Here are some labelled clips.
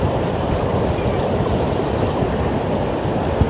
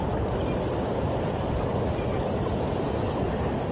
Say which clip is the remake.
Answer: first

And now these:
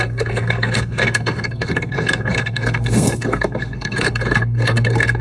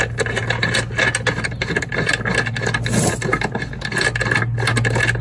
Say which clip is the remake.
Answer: first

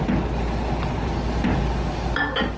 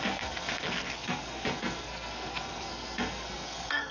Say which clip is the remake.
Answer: second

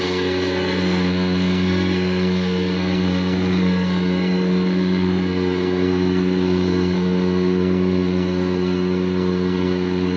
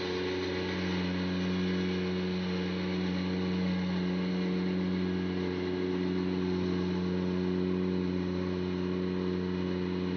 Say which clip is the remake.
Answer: first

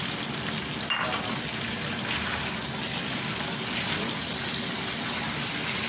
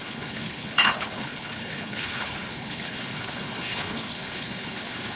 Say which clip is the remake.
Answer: second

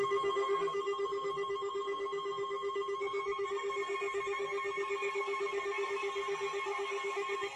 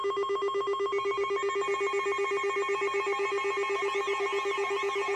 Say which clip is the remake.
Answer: first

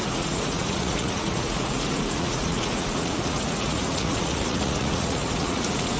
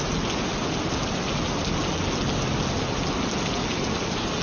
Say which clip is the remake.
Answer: first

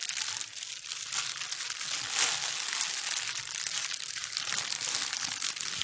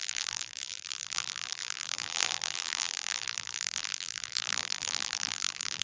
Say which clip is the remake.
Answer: second